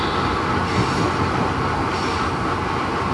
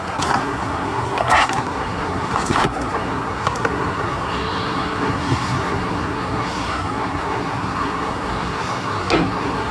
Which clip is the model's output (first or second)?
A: second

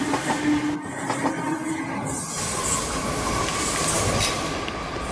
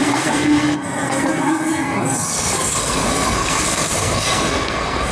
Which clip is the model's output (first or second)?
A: second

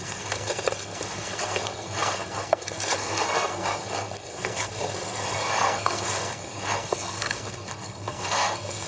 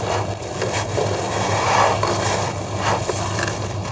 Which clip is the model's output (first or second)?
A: first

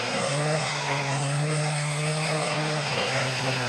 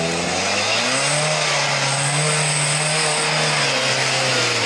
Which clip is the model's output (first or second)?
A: first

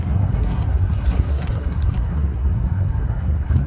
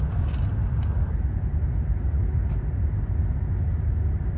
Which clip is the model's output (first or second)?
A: first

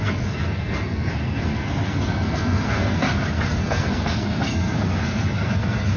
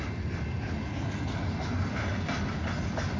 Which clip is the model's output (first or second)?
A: first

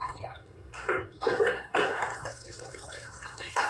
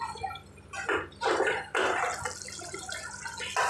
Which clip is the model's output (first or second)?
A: first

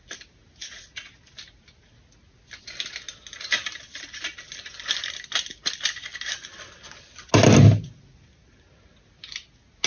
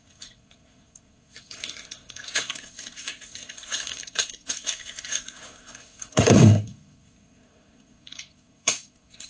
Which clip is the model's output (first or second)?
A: second